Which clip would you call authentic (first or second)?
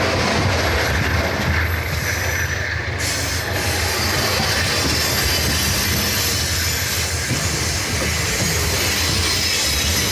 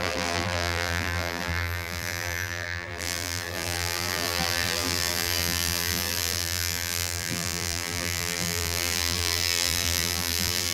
first